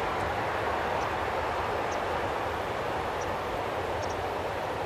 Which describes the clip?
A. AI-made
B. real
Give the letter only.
B